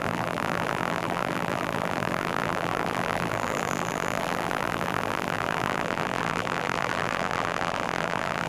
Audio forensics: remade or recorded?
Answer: remade